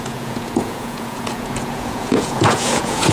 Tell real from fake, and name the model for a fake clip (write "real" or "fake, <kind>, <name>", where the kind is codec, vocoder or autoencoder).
fake, vocoder, Vocos